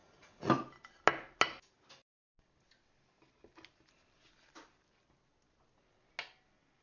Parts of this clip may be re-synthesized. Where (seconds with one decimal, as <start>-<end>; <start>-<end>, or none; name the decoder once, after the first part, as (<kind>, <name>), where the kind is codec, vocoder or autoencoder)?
0.0-0.5 (vocoder, Vocos)